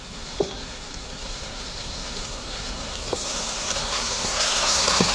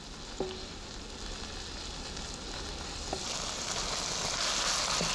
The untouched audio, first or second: second